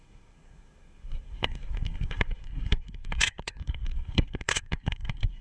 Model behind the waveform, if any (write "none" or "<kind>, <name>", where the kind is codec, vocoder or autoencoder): codec, SNAC